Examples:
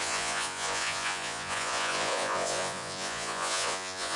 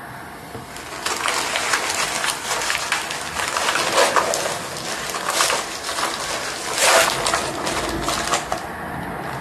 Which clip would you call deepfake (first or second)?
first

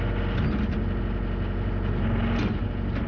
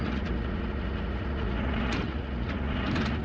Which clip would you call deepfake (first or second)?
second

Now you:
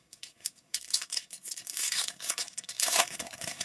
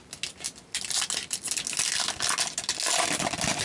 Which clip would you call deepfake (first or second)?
first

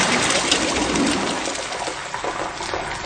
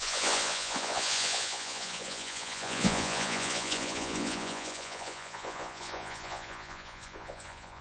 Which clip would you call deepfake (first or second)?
second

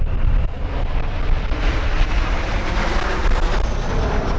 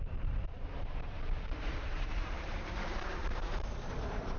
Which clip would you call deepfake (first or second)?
second